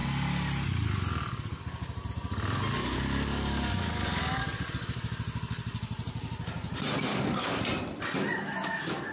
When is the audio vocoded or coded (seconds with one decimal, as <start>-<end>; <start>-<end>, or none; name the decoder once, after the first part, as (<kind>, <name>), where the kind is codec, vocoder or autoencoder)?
2.8-4.4 (codec, DAC); 7.1-7.6